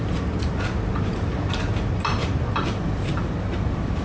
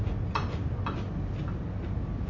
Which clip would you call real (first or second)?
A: second